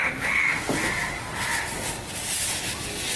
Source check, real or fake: real